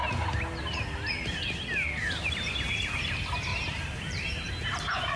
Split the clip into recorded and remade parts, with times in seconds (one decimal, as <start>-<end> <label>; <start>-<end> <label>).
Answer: 0.0-0.8 remade; 0.8-3.5 recorded; 3.5-4.5 remade; 4.5-5.2 recorded